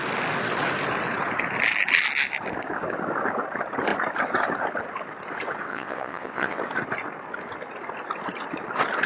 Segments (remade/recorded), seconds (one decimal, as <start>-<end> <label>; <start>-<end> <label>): 0.0-5.7 recorded; 5.7-6.6 remade; 6.6-9.1 recorded